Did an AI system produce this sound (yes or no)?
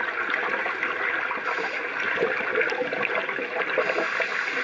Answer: no